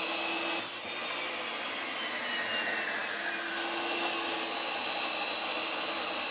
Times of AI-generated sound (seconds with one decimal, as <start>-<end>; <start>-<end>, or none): none